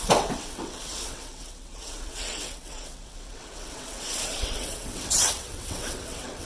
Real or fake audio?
fake